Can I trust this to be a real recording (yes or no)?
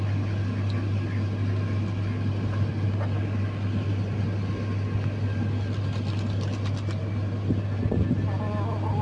yes